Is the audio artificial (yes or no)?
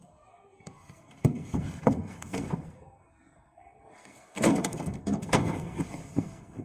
yes